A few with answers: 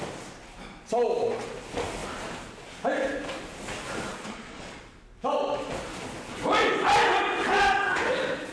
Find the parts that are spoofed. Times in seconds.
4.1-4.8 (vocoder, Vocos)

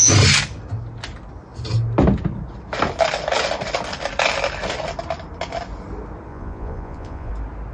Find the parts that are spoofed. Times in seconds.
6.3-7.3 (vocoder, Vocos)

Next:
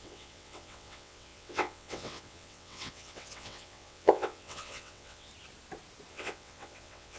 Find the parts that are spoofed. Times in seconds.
0.0-5.3 (vocoder, WaveNeXt); 6.1-7.2

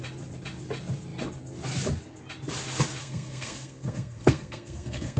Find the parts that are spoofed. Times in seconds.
3.0-5.2 (codec, SNAC)